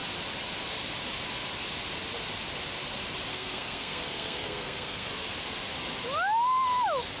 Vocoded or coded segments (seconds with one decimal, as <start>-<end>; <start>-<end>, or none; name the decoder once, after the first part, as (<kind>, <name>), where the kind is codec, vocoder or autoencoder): 3.3-5.1 (codec, SNAC)

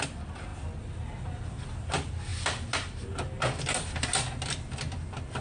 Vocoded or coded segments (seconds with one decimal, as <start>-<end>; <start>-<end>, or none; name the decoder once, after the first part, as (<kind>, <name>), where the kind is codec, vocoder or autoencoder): none

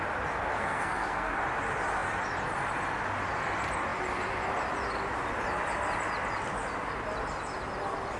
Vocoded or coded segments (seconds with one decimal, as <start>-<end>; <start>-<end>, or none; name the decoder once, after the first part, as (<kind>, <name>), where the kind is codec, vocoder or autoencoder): 0.5-1.3 (codec, SNAC)

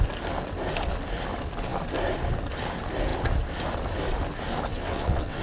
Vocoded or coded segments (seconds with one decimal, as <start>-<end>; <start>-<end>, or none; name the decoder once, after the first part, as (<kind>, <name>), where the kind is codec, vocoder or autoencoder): 4.7-5.4 (vocoder, WaveNeXt)

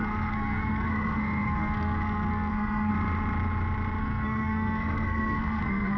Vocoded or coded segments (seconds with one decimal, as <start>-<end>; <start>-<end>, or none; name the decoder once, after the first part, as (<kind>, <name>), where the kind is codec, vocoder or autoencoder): 0.0-2.9 (codec, SNAC); 4.0-6.0